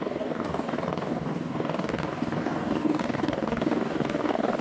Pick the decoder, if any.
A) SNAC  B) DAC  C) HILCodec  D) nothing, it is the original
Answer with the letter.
B